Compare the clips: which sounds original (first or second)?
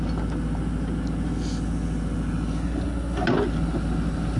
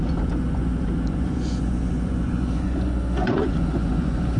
first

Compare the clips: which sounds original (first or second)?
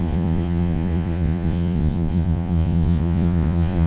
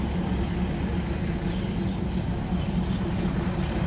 second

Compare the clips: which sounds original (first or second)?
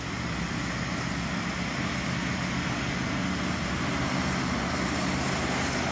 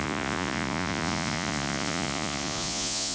first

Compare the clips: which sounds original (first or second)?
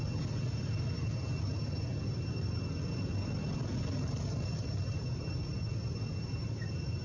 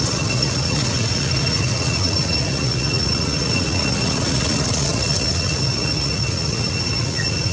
first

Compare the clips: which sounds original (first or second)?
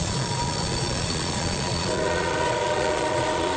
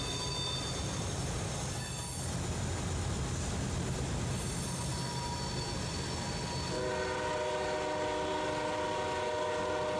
second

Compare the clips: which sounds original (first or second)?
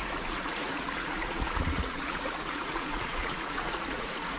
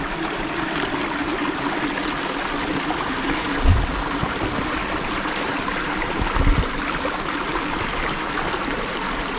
second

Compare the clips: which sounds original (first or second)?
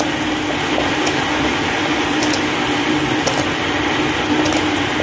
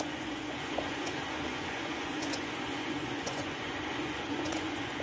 first